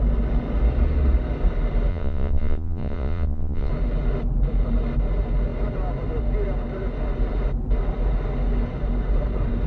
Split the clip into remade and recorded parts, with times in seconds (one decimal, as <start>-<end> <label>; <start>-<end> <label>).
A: 0.0-1.9 recorded; 1.9-3.7 remade; 3.7-9.7 recorded